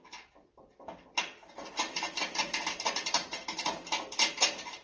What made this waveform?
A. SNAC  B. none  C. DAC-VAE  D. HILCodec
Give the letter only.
B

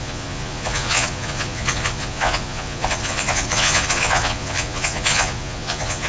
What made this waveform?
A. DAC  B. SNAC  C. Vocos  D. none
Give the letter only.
C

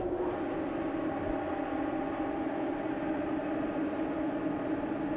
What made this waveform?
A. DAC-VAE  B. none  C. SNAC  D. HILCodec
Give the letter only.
B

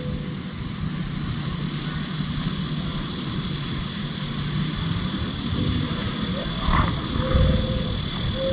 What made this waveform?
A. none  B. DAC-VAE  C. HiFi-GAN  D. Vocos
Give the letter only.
A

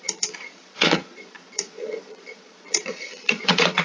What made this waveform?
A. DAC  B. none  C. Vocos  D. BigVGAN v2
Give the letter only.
C